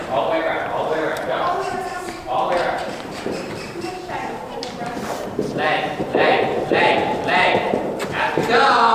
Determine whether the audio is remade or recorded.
remade